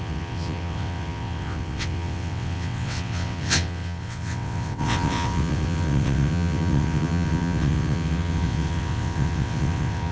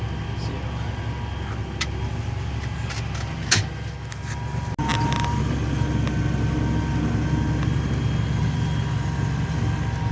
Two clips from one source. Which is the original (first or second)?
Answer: second